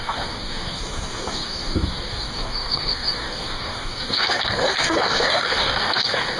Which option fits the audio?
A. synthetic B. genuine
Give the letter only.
A